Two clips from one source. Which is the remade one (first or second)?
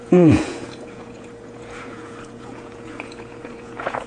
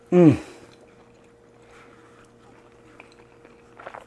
first